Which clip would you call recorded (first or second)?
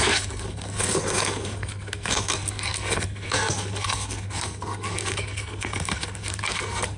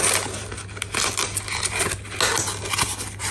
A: second